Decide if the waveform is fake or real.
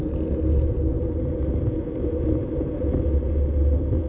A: real